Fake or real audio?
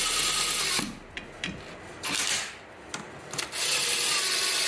real